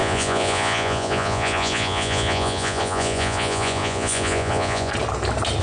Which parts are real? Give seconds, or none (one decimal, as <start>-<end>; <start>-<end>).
4.9-5.6